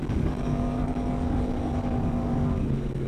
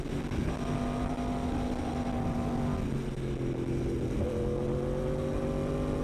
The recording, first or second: second